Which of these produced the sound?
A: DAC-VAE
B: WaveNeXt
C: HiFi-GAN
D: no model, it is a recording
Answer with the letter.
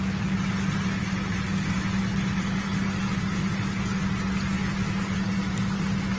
D